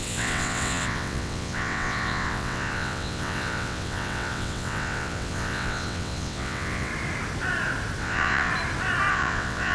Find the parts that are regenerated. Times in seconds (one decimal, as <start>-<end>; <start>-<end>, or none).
0.0-6.9; 8.0-8.5; 9.1-9.7